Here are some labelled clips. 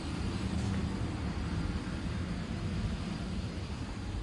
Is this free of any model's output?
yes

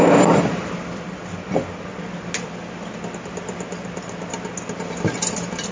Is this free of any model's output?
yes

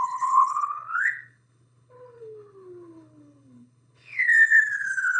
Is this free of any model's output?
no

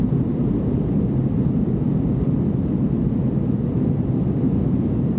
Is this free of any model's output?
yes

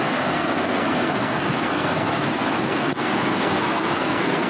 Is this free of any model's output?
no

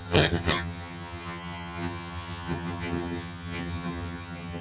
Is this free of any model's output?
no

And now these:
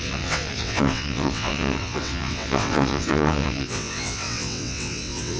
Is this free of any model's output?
no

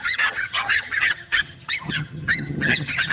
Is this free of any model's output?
no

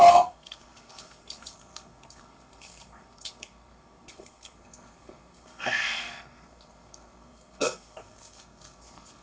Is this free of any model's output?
no